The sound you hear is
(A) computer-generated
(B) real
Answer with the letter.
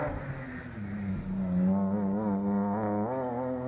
B